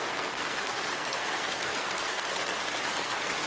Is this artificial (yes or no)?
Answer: yes